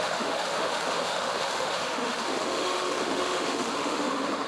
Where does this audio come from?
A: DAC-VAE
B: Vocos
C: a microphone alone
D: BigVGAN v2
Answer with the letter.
A